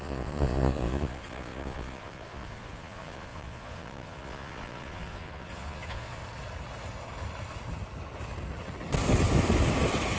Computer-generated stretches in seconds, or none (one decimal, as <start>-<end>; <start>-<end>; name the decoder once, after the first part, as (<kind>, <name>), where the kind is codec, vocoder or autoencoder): 0.0-6.2 (vocoder, Vocos)